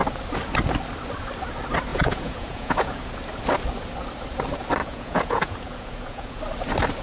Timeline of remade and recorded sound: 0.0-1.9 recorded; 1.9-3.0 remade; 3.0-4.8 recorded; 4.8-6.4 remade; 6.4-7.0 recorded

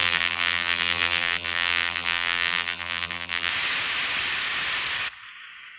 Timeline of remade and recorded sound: 0.0-3.5 remade; 3.5-5.8 recorded

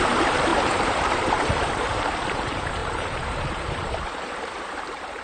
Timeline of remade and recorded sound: 0.0-5.2 remade

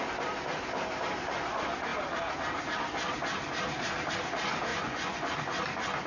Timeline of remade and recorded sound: 0.0-4.7 recorded; 4.7-5.3 remade; 5.3-6.1 recorded